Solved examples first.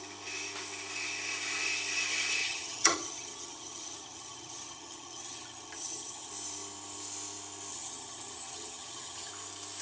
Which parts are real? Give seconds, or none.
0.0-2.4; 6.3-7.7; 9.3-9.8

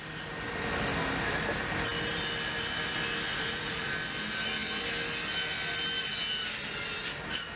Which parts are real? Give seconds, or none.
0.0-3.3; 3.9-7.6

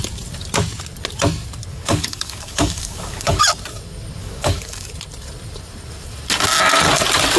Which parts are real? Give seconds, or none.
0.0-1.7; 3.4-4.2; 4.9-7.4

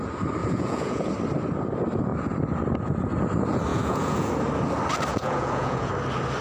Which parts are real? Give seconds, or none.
0.0-0.4; 1.1-3.7; 4.3-5.1; 5.9-6.4